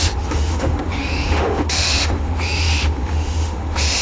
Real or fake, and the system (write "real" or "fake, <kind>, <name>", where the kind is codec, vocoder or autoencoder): fake, autoencoder, DAC-VAE